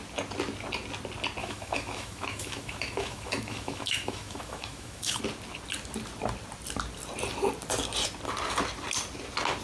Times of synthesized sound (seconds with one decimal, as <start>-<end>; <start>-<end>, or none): 1.4-5.2

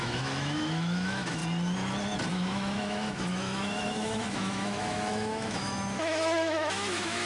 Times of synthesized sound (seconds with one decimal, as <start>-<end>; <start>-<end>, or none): 0.0-1.4; 2.3-7.3